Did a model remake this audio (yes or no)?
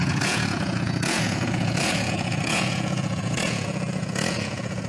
yes